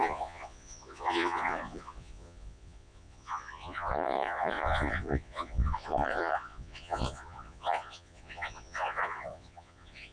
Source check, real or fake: fake